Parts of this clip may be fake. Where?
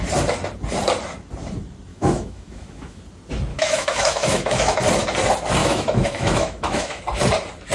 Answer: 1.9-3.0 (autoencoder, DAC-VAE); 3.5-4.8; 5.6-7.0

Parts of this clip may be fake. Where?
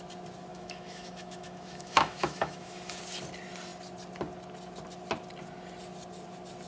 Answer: 0.5-3.0 (autoencoder, DAC-VAE)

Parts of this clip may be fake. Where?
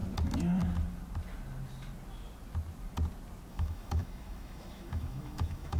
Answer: 3.5-5.8 (autoencoder, DAC-VAE)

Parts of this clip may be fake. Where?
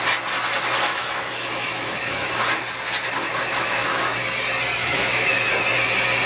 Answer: 0.9-2.4 (autoencoder, DAC-VAE); 3.5-4.0; 4.8-5.4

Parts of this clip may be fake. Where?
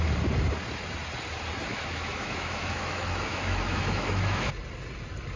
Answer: 1.7-4.5 (autoencoder, DAC-VAE)